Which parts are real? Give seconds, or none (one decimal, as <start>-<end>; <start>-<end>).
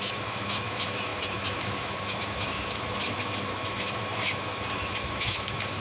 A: none